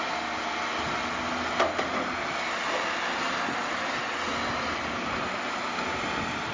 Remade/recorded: recorded